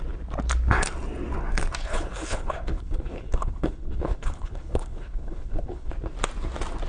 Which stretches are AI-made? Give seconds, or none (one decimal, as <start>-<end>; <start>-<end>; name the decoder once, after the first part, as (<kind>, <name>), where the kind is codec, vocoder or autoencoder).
1.8-5.9 (codec, HILCodec)